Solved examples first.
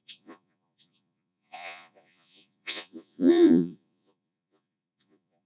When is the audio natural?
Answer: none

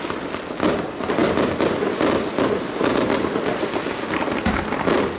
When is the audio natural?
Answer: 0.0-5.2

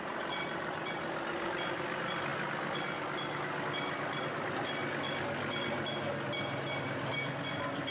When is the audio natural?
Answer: 0.0-7.9

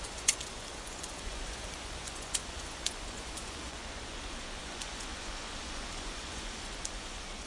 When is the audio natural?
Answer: none

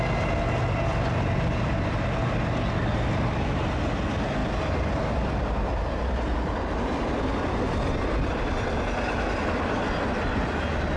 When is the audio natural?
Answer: 0.0-11.0

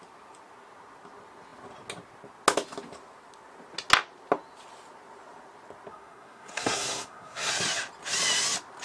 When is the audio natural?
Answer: 0.0-5.9; 7.5-8.8

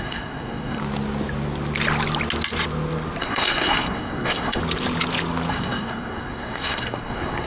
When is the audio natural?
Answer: 0.8-3.2; 4.6-5.5